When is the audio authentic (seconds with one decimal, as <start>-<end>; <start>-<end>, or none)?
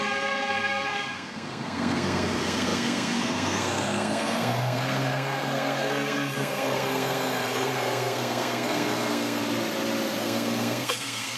9.4-10.2